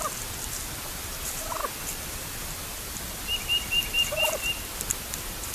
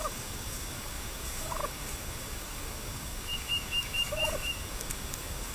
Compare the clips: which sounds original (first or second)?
first